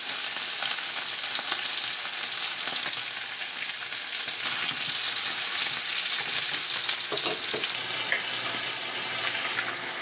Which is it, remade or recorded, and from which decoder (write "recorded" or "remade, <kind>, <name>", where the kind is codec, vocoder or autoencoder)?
recorded